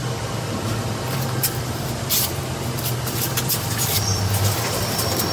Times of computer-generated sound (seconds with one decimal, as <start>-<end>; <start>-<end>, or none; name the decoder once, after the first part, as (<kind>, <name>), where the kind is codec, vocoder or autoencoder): 0.0-5.3 (vocoder, BigVGAN v2)